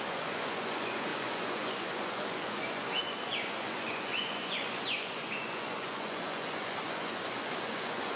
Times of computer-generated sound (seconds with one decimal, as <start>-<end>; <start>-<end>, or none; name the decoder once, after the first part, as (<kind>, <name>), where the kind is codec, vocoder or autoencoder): 0.0-8.2 (vocoder, Vocos)